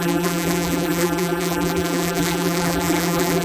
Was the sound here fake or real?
fake